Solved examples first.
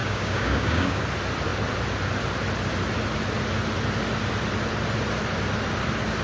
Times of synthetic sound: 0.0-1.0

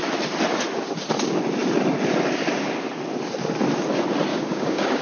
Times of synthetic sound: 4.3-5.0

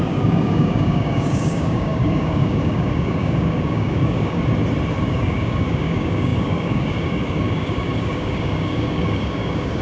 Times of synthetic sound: 0.0-4.4; 5.0-9.8